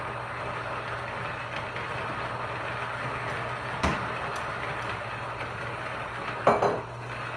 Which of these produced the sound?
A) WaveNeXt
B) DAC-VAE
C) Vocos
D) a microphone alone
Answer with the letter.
D